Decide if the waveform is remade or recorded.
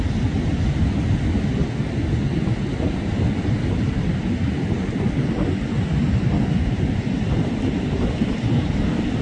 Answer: recorded